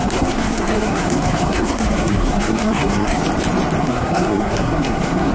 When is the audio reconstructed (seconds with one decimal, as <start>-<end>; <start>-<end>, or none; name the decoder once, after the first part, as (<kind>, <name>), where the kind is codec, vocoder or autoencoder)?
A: 0.0-3.2 (codec, SNAC); 3.8-5.3